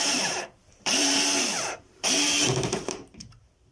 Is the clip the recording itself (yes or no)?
no